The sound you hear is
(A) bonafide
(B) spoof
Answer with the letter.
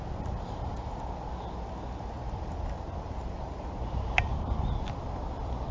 A